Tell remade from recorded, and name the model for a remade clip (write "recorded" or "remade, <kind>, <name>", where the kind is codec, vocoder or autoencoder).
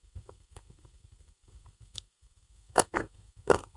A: remade, codec, SNAC